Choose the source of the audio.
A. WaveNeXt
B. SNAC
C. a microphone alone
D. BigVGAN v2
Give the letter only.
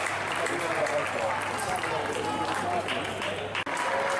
C